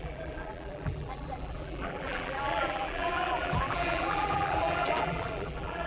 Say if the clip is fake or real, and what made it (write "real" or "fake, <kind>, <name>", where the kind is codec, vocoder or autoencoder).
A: fake, vocoder, BigVGAN v2